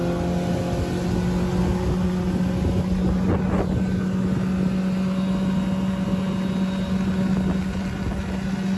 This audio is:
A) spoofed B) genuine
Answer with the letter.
B